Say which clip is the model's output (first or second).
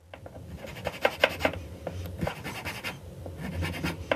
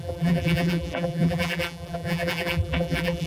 second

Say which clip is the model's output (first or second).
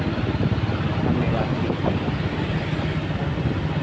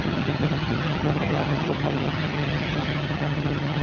second